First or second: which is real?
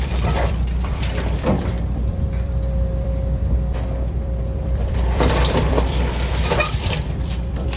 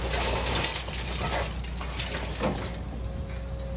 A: second